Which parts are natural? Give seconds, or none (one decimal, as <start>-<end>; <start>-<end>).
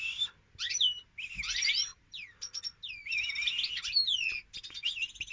0.0-1.9; 2.6-5.3